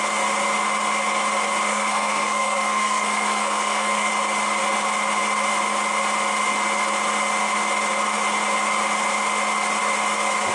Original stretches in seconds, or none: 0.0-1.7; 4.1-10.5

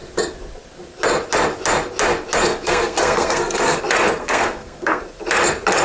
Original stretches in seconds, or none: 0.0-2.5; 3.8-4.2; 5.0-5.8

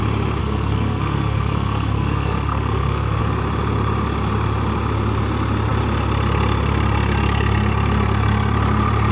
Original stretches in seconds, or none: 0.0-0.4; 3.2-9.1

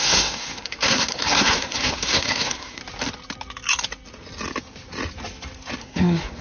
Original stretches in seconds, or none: 2.8-5.8

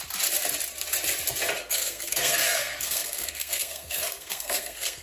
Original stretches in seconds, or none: 0.0-1.6

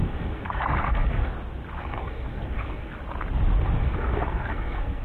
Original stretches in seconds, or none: 1.3-1.8; 2.9-3.8